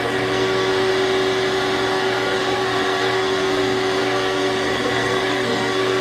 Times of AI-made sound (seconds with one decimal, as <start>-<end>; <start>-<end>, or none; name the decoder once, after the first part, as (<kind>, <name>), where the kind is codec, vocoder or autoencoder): 0.0-0.9 (codec, SNAC); 1.9-6.0